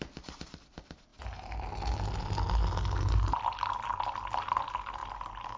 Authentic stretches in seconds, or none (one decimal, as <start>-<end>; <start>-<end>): 0.0-5.6